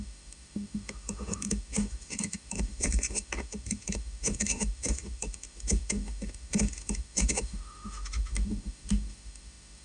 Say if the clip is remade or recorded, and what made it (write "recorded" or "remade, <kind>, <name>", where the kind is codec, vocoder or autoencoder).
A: remade, autoencoder, DAC-VAE